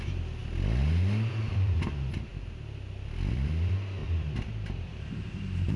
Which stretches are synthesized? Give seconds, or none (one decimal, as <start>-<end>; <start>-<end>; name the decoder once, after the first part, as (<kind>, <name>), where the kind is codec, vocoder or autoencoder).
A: 0.0-0.4 (vocoder, BigVGAN v2); 1.3-2.3; 3.3-5.8